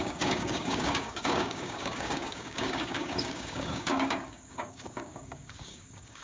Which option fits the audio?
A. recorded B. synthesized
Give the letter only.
B